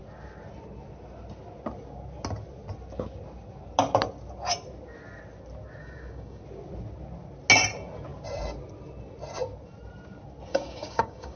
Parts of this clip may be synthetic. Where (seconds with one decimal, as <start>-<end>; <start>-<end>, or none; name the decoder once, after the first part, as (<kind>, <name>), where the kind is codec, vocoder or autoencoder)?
5.8-6.4 (codec, DAC); 10.5-11.4